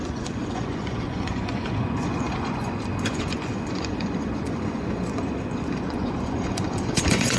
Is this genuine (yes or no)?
no